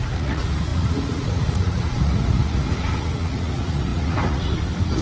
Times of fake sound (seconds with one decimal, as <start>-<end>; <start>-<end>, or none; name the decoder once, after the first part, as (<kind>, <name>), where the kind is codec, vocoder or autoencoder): 0.0-5.0 (vocoder, Vocos)